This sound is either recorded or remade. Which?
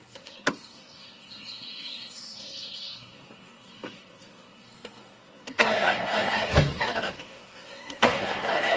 remade